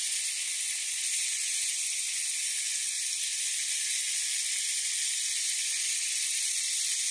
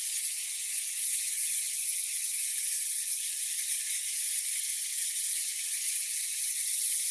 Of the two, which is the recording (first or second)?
first